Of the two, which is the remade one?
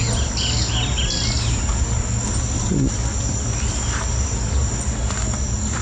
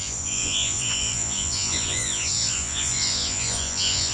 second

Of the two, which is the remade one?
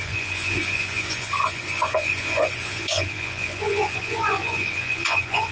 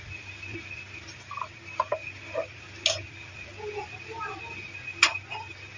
first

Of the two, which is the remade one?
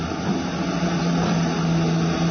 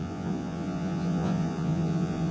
second